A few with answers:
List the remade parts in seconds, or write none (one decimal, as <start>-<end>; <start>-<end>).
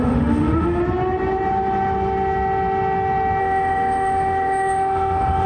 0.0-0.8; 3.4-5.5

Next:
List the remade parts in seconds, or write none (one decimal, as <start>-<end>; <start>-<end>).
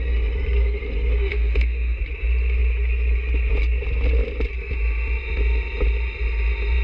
1.3-2.0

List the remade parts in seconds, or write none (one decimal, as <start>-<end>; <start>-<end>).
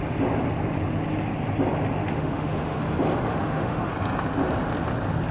2.0-2.8; 3.3-3.9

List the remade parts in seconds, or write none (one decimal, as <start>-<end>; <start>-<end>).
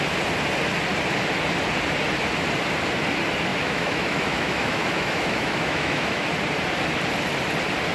3.5-6.3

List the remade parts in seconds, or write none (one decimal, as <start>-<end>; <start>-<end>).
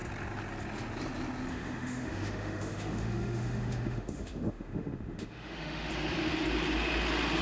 1.5-5.9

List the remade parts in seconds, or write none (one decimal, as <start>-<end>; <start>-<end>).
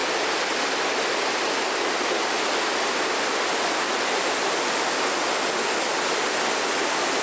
none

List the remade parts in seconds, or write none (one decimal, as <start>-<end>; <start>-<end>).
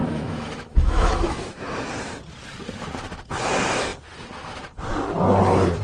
0.0-1.9